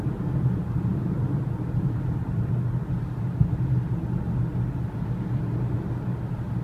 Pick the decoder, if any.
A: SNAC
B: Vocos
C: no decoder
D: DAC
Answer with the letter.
C